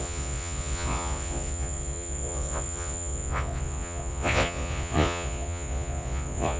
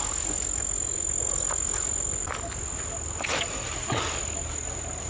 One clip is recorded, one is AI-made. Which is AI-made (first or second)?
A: first